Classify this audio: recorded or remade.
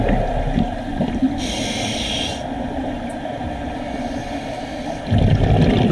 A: recorded